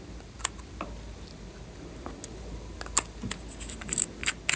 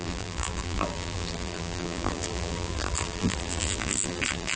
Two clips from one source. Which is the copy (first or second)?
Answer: second